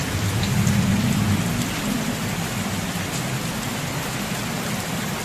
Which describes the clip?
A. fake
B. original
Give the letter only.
B